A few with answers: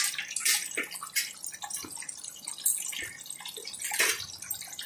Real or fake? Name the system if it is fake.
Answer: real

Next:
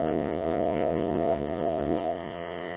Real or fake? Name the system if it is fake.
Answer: fake, vocoder, Vocos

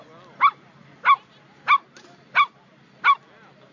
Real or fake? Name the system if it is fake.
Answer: real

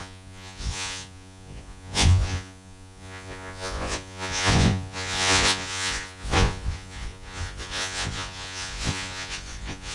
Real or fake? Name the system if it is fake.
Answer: fake, vocoder, Vocos